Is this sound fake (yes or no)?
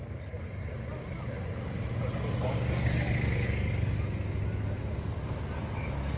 no